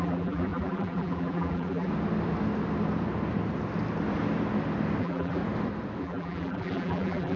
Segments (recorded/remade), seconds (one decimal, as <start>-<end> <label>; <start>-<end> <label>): 0.0-1.9 remade; 1.9-5.0 recorded; 5.0-5.4 remade; 5.4-6.0 recorded; 6.0-7.4 remade